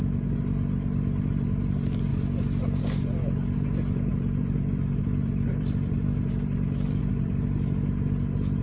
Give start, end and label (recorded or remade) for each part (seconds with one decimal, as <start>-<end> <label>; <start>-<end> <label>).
0.0-4.1 recorded; 4.1-7.1 remade; 7.1-8.6 recorded